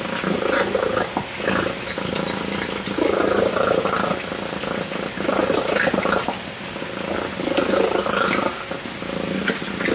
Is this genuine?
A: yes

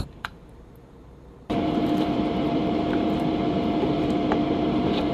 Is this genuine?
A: no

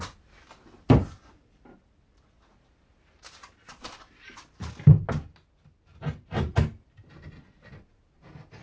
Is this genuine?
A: yes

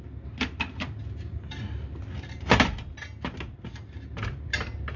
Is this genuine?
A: yes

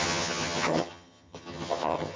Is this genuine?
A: no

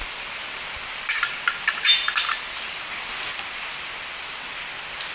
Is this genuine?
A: yes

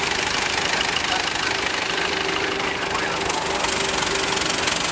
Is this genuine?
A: yes